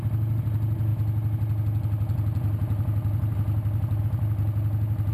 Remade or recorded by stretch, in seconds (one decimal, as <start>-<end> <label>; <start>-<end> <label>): 0.0-5.1 recorded